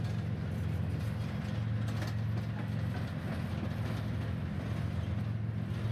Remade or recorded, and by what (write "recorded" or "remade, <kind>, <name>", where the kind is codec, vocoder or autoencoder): recorded